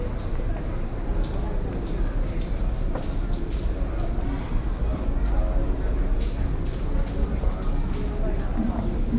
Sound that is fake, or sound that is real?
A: real